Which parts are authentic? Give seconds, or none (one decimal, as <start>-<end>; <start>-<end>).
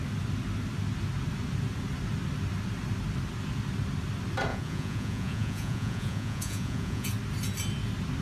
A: 0.0-4.5; 7.1-8.2